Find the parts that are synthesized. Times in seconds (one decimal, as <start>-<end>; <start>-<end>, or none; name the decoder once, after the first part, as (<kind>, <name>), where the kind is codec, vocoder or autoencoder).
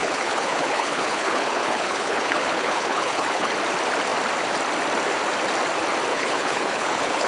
0.0-3.5 (codec, HILCodec); 6.1-7.3